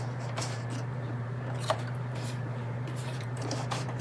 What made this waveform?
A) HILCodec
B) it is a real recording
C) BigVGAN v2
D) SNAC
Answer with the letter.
C